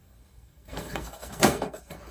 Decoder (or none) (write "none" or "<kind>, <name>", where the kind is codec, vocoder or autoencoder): codec, SNAC